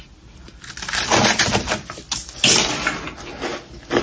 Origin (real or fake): real